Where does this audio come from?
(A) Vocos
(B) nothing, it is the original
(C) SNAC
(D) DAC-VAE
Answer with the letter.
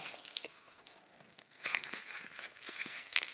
C